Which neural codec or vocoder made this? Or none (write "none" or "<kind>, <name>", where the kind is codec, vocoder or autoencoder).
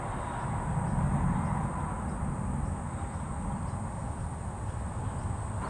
none